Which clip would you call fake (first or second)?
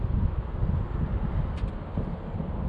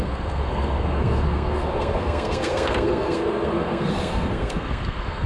second